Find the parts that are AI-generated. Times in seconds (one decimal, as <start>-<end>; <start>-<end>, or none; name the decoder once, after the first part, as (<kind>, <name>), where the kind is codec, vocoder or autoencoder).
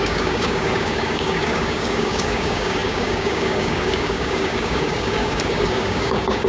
0.0-6.5 (codec, DAC)